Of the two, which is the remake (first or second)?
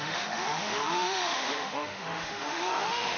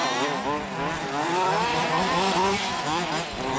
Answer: first